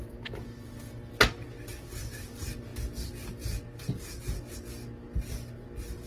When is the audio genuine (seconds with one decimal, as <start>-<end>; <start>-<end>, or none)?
0.0-6.1